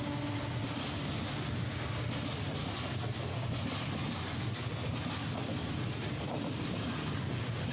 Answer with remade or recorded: recorded